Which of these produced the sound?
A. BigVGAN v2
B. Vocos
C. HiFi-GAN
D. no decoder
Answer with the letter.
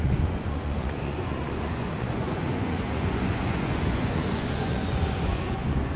B